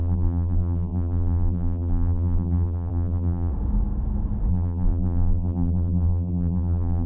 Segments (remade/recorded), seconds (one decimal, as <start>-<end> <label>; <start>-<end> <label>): 0.0-3.5 remade; 3.5-4.5 recorded; 4.5-7.1 remade